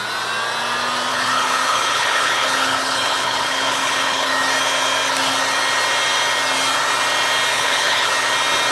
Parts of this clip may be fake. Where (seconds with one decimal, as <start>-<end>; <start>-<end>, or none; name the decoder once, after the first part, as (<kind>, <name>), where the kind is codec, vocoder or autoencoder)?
1.1-4.3 (codec, HILCodec); 7.5-8.1